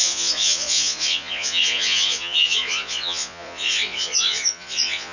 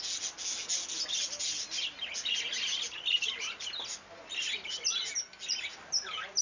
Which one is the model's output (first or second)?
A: first